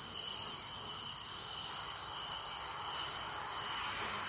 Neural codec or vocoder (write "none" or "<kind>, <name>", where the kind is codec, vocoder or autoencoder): none